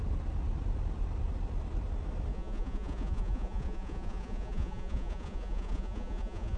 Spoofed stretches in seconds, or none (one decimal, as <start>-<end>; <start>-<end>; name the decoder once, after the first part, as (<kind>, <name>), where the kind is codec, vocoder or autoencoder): 2.3-6.6 (vocoder, Vocos)